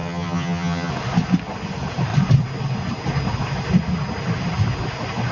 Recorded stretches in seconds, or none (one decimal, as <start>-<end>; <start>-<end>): 0.9-5.3